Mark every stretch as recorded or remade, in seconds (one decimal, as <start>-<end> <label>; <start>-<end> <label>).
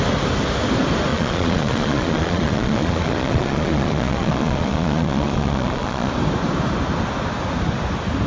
0.0-1.1 recorded; 1.1-6.1 remade; 6.1-8.3 recorded